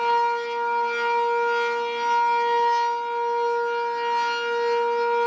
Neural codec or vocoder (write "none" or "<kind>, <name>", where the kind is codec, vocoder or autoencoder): none